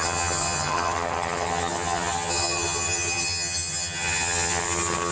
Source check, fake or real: fake